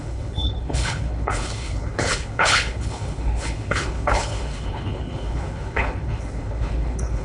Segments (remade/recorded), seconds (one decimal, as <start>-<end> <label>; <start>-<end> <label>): 0.0-7.2 remade